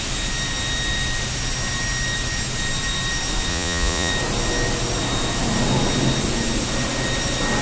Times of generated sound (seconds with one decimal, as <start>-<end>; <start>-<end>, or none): 3.5-4.1